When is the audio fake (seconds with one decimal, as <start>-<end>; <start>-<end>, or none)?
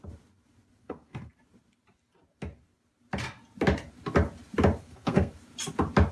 0.8-1.3; 4.8-5.3